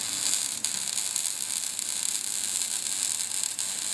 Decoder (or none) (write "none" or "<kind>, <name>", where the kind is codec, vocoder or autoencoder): none